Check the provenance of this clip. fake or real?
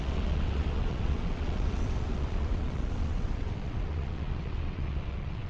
fake